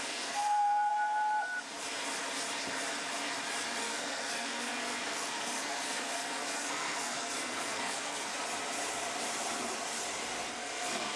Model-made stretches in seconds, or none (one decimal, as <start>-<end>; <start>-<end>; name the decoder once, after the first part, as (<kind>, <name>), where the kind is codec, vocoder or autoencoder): 0.0-0.9 (codec, SNAC); 3.8-8.3; 10.5-11.2